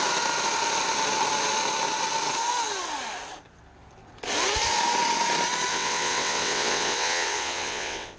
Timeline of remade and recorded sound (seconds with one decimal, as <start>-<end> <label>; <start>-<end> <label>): 0.0-5.7 recorded; 5.7-8.2 remade